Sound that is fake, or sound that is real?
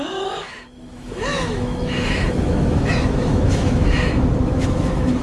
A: fake